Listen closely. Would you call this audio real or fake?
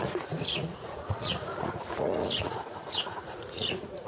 fake